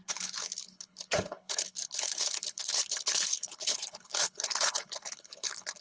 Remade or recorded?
remade